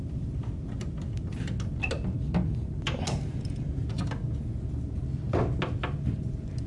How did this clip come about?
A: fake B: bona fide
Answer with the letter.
B